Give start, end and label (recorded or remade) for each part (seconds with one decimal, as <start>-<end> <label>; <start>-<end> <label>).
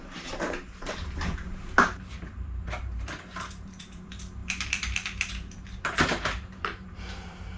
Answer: 0.0-7.6 remade